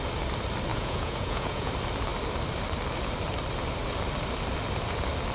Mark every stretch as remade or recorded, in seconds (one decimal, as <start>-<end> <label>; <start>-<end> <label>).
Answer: 0.0-0.7 recorded; 0.7-1.7 remade; 1.7-5.3 recorded